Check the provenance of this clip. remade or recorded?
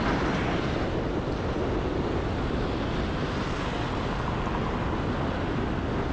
recorded